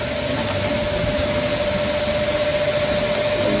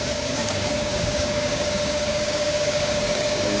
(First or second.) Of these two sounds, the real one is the first